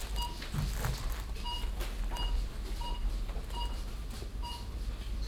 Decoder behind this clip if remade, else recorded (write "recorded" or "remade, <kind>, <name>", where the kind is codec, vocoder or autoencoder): recorded